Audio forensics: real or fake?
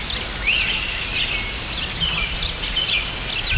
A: real